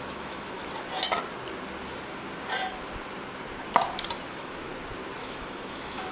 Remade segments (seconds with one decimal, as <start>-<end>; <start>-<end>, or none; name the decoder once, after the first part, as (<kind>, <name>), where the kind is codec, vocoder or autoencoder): 0.0-0.6 (autoencoder, DAC-VAE); 4.3-4.7; 5.2-6.1